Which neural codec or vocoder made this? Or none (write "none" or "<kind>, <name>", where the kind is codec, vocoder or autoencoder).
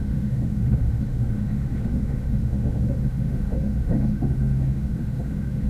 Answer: autoencoder, DAC-VAE